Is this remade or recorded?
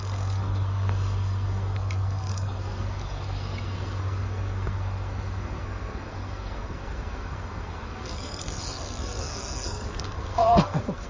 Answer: remade